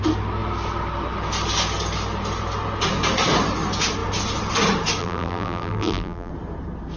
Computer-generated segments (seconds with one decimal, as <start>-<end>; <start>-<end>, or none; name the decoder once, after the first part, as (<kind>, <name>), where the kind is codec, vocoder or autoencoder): 5.0-6.3 (vocoder, BigVGAN v2)

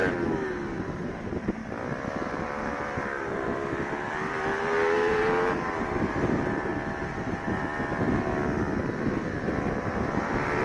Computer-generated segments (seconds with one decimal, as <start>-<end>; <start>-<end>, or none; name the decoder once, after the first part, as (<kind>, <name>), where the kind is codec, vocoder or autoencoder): 0.8-1.6 (vocoder, BigVGAN v2); 2.2-6.7; 9.8-10.6

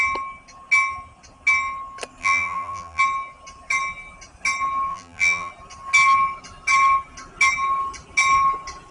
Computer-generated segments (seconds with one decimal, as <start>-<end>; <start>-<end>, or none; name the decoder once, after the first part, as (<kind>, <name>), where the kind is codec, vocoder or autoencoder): 2.2-3.0 (vocoder, BigVGAN v2); 4.9-5.5

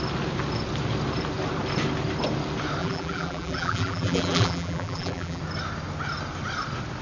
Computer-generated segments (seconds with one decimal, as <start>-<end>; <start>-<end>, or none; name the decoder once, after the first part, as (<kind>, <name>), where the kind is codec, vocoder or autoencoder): 2.8-5.4 (vocoder, BigVGAN v2)

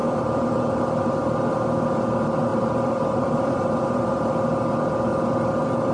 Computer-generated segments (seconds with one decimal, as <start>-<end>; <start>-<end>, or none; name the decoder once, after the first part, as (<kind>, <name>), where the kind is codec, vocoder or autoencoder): 0.0-0.8 (vocoder, BigVGAN v2); 2.5-4.3

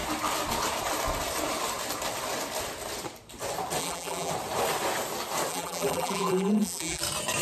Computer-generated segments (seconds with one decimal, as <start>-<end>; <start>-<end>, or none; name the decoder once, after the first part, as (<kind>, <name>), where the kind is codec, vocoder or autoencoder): 3.8-4.3 (vocoder, BigVGAN v2); 5.5-7.0

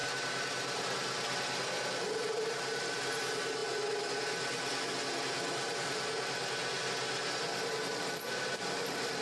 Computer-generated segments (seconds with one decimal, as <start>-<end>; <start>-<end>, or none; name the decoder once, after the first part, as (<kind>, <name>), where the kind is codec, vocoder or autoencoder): 0.0-3.0 (vocoder, BigVGAN v2); 7.5-9.2

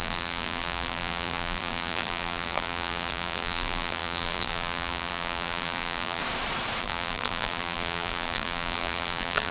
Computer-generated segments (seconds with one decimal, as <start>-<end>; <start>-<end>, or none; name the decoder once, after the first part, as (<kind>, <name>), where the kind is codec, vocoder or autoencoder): 0.0-6.2 (vocoder, BigVGAN v2); 6.8-9.5